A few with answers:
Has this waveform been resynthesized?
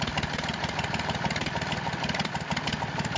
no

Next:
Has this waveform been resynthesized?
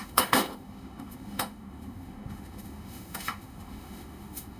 yes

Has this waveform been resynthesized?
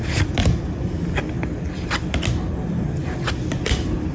no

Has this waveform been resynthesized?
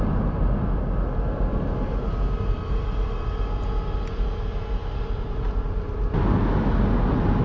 no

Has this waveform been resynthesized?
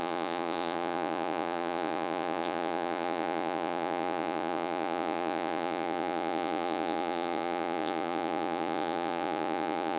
yes